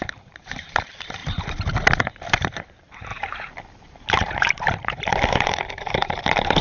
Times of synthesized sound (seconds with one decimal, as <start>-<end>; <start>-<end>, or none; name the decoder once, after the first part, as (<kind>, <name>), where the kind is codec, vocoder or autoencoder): 0.0-1.2 (vocoder, BigVGAN v2); 2.0-6.6